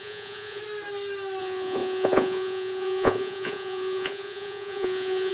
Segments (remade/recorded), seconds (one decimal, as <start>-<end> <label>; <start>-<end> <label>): 0.0-0.6 remade; 0.6-1.4 recorded; 1.4-5.3 remade